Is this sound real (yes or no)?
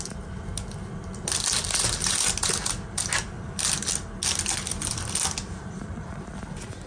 yes